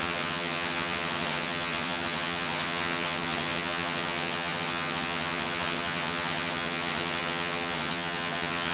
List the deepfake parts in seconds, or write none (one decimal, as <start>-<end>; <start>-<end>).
0.0-8.7